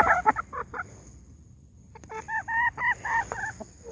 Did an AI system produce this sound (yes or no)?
no